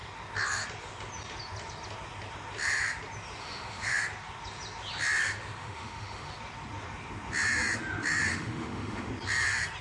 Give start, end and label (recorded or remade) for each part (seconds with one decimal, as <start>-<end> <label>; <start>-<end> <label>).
0.0-3.4 recorded; 3.4-4.0 remade; 4.0-5.6 recorded; 5.6-6.3 remade; 6.3-8.3 recorded; 8.3-9.1 remade; 9.1-9.8 recorded